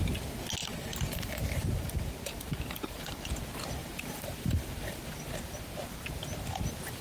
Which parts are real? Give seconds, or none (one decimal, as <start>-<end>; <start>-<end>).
0.0-0.6; 3.3-3.8; 5.3-7.0